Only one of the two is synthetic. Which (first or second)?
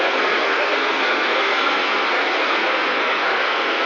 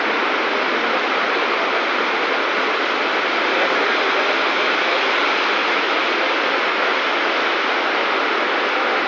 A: first